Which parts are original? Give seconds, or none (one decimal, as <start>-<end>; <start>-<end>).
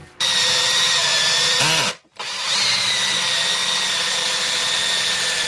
0.0-5.5